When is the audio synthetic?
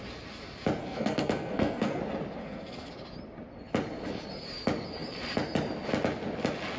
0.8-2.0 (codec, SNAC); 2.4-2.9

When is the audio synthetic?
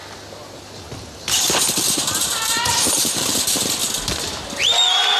2.2-3.8 (vocoder, BigVGAN v2)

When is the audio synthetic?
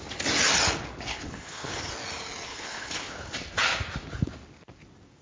1.1-1.9 (codec, HILCodec); 2.5-3.3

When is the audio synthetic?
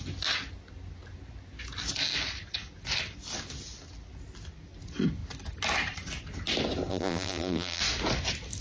6.9-7.8 (vocoder, BigVGAN v2)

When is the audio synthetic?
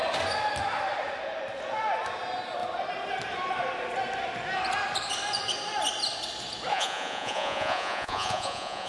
6.7-8.9 (vocoder, Vocos)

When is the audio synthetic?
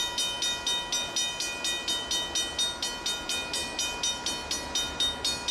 none